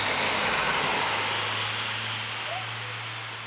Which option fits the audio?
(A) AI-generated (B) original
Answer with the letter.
B